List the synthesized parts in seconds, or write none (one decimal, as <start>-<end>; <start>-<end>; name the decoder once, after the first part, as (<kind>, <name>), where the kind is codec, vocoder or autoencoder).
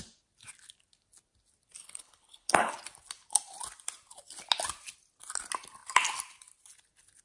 1.8-2.7 (codec, HILCodec)